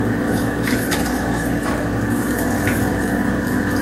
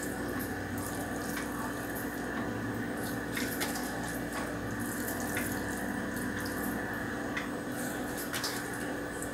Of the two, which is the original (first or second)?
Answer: second